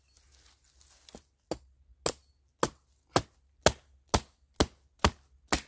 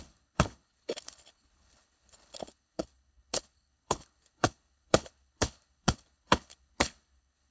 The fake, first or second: second